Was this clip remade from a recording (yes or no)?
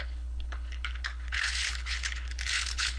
yes